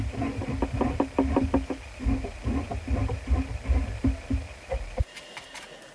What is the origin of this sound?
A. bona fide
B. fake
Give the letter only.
A